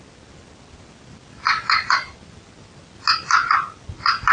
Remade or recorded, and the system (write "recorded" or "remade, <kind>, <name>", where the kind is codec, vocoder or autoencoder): recorded